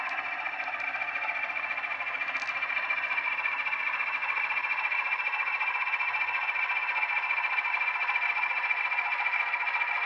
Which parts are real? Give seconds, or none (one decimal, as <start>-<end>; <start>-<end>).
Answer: 0.0-10.1